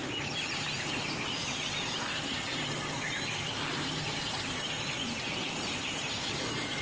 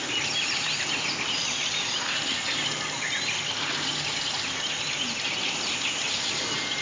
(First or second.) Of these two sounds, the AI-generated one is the first